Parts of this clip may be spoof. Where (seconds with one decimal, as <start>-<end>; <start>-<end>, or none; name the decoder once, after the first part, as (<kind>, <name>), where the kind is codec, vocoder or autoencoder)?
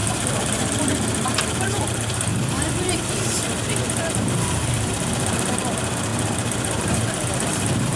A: 0.0-2.3 (vocoder, BigVGAN v2); 4.1-8.0